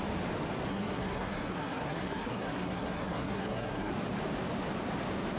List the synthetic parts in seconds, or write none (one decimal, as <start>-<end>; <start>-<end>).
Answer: 0.7-3.9